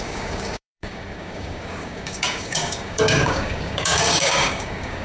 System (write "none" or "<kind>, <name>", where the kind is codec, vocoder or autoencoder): codec, DAC